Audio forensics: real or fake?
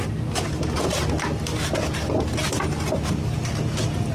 real